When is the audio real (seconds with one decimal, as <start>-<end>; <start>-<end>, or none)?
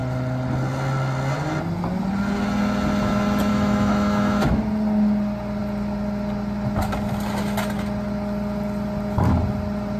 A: 0.0-3.5; 4.6-10.0